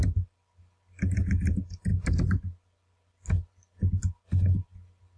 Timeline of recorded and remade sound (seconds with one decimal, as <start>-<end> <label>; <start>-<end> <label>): 0.0-5.2 recorded